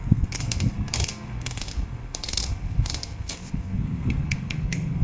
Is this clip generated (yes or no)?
yes